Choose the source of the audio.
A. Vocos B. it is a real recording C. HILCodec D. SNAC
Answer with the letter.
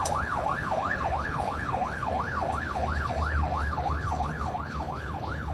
C